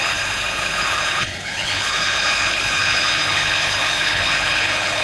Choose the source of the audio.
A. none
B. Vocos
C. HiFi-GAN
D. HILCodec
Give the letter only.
D